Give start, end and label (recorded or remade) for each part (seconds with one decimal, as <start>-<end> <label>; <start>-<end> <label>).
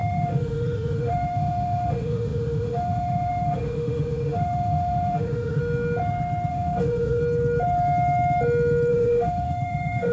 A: 0.0-5.6 remade; 5.6-6.5 recorded; 6.5-7.2 remade; 7.2-8.9 recorded; 8.9-10.1 remade